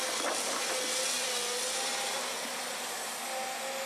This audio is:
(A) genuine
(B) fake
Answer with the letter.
A